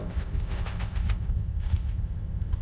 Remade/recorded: remade